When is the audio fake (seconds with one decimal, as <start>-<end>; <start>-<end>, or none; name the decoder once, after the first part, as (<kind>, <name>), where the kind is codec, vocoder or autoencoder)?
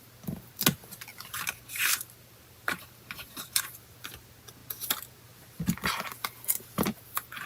1.1-3.7 (vocoder, BigVGAN v2)